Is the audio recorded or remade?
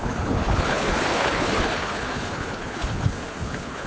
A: remade